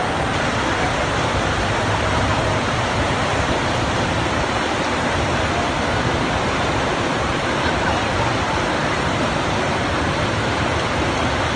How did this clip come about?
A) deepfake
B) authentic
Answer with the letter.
B